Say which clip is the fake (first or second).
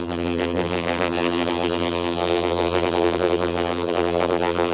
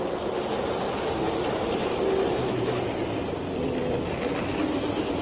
first